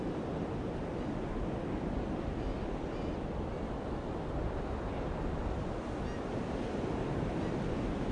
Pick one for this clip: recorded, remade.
recorded